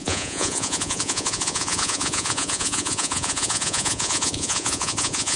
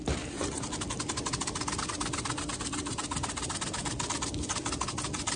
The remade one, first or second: first